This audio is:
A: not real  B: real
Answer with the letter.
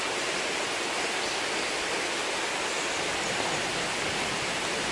B